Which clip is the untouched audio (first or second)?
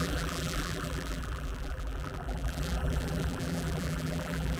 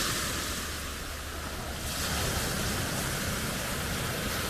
second